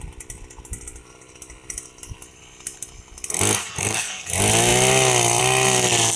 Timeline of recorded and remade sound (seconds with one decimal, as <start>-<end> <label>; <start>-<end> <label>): 0.0-3.6 recorded; 3.6-4.3 remade; 4.3-6.2 recorded